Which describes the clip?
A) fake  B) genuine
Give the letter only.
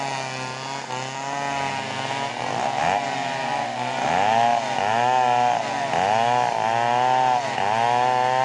B